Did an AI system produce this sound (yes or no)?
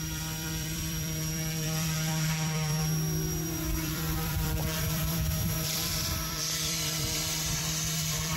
yes